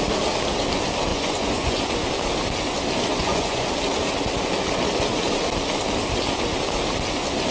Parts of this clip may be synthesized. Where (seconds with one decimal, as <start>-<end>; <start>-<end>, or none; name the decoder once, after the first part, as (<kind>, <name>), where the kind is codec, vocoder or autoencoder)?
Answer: 1.1-1.8 (vocoder, Vocos); 3.1-3.7